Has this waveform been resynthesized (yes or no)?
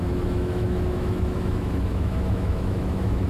yes